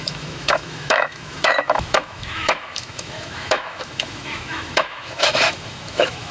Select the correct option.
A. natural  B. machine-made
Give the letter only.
B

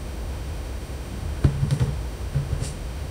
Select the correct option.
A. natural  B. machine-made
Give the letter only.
B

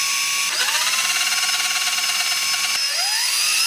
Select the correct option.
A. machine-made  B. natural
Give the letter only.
B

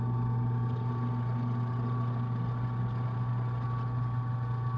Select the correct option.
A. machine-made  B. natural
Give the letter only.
B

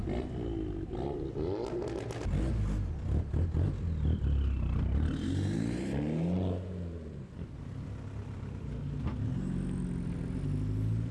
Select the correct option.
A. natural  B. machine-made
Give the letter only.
A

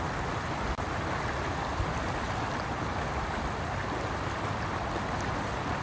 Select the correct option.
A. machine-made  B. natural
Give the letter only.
B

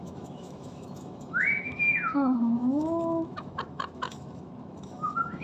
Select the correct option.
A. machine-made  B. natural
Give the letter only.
A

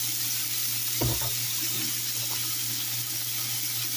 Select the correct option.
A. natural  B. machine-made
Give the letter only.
A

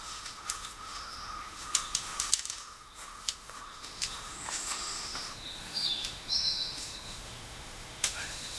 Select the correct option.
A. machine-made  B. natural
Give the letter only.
A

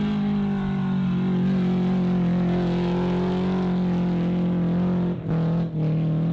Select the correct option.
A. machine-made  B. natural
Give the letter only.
B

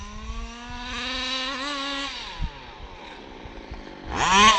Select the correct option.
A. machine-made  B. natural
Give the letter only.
B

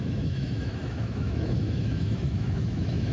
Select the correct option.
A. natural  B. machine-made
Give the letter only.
B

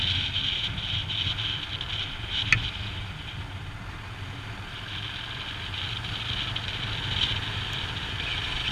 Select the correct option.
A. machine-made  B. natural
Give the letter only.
B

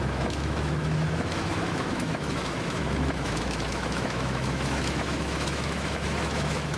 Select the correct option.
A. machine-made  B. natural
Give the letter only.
A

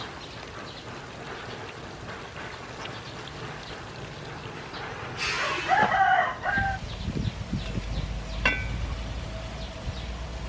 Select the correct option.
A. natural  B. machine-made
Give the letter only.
A